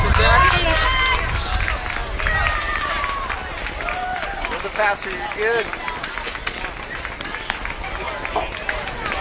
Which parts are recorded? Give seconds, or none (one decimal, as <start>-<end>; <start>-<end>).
0.0-9.2

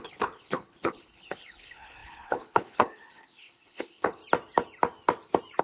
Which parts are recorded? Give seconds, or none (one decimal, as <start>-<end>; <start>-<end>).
4.2-5.6